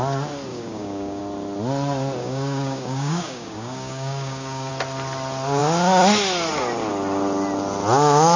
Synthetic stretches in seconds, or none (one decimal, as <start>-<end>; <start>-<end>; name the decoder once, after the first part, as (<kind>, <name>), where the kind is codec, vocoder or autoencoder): 0.5-1.2 (codec, DAC); 2.2-4.7